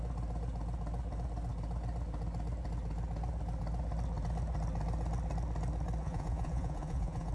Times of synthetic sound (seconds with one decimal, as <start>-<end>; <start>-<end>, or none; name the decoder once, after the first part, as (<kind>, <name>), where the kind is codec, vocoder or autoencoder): 6.0-7.3 (vocoder, Vocos)